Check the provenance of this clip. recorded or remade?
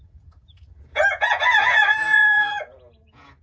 remade